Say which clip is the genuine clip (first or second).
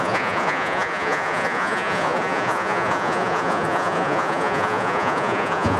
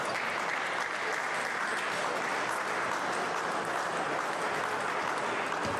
second